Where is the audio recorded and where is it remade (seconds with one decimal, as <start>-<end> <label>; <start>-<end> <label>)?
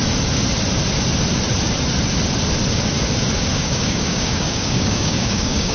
0.0-3.4 recorded; 3.4-5.7 remade